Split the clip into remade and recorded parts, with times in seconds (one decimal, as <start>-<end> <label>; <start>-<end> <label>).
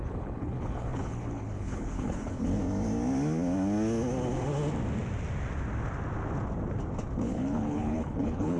0.0-2.6 remade; 2.6-7.2 recorded; 7.2-8.6 remade